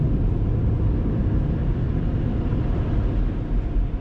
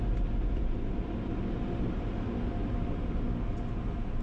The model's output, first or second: first